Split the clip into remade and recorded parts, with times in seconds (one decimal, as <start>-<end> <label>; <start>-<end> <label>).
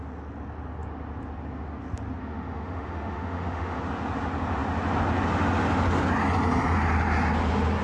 0.0-2.2 recorded; 2.2-3.8 remade; 3.8-7.8 recorded